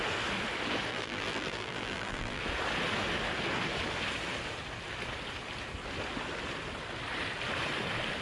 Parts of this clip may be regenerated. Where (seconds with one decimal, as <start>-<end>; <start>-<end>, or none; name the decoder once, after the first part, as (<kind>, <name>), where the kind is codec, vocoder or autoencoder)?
0.9-2.4 (vocoder, BigVGAN v2)